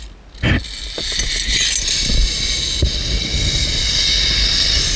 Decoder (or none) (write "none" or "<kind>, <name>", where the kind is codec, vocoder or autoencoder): none